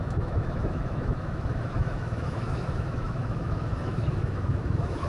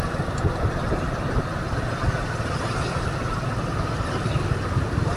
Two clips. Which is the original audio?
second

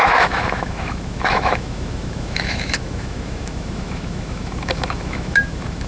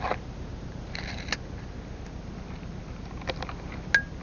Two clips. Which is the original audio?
second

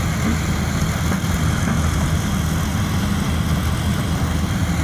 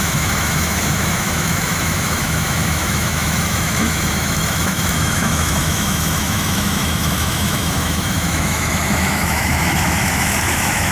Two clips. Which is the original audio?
first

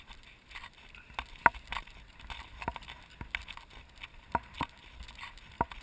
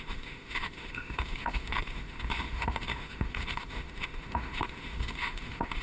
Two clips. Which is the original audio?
first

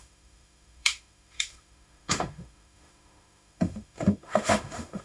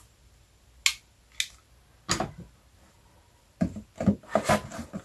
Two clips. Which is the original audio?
second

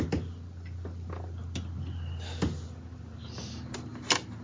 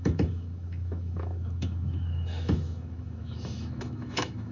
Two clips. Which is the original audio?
first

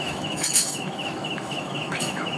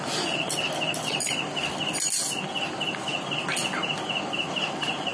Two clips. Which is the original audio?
second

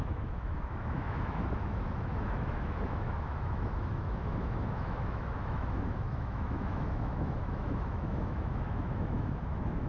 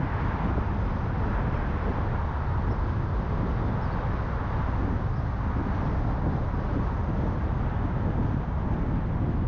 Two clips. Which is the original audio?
second